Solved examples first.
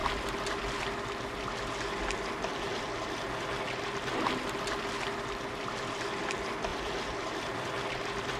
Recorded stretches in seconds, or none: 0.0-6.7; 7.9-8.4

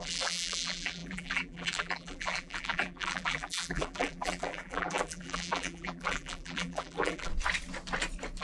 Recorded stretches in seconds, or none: 7.3-8.4

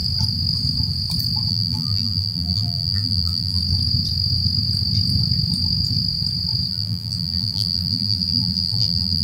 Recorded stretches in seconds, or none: 0.0-1.5; 3.6-6.7

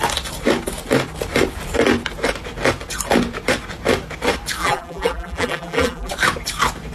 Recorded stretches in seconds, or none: 0.0-4.6; 6.1-6.9

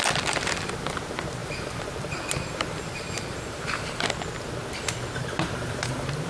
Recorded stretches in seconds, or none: 0.0-1.4; 4.1-4.6